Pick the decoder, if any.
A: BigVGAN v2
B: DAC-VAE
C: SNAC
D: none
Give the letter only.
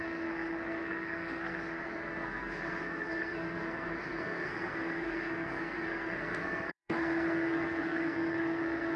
C